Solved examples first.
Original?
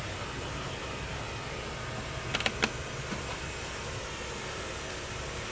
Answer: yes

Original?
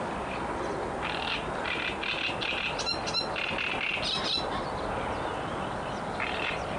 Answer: yes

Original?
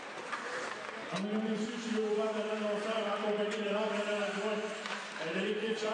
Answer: yes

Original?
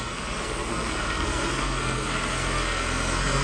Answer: no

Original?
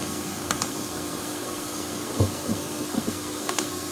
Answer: no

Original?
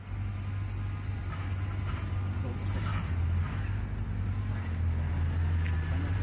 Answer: yes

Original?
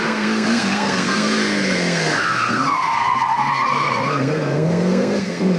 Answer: no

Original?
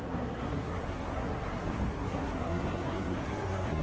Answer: no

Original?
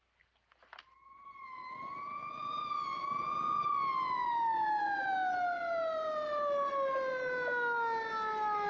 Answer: yes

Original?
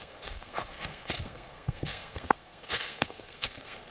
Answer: no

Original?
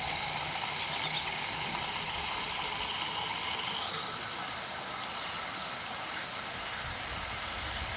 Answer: yes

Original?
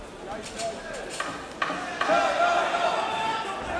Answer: yes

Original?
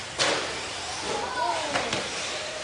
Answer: yes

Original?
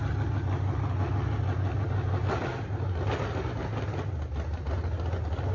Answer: yes